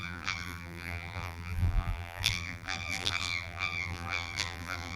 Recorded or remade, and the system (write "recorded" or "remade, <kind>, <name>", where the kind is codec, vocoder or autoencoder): remade, vocoder, BigVGAN v2